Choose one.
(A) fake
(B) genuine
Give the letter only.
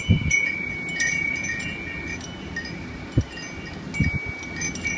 B